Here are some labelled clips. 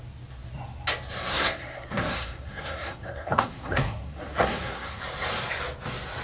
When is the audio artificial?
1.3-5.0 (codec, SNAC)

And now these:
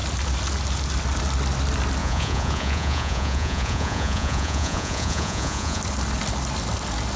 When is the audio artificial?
2.0-5.8 (vocoder, Vocos)